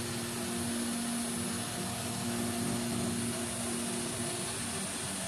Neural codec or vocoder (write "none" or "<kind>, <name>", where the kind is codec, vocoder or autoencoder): none